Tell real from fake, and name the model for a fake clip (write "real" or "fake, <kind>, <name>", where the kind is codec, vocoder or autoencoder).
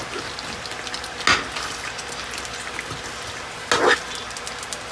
real